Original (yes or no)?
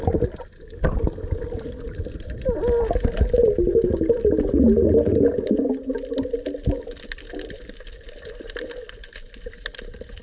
yes